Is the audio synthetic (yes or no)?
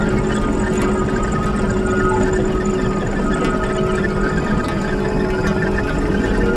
no